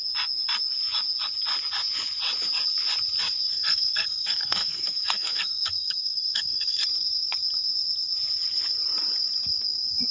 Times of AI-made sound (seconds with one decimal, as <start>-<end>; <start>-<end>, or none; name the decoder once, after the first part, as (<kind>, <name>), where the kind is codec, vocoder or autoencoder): 3.5-6.8 (codec, SNAC)